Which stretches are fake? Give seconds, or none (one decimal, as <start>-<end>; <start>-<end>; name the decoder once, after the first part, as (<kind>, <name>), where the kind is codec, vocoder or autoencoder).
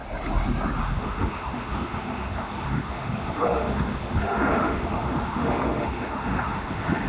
0.8-7.1 (autoencoder, DAC-VAE)